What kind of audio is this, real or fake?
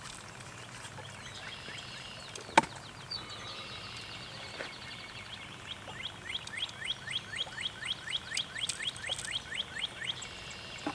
real